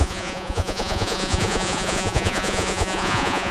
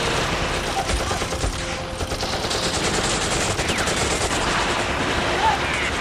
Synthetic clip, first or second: first